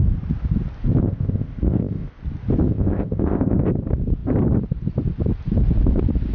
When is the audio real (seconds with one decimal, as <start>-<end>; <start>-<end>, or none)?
0.0-1.0; 2.2-2.7; 3.7-6.3

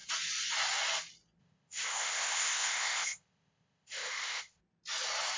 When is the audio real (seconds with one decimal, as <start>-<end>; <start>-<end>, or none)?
0.0-1.4; 4.6-5.4